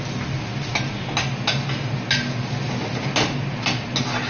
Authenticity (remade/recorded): recorded